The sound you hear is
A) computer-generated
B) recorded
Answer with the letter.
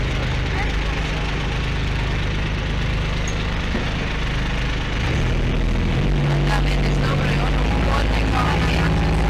B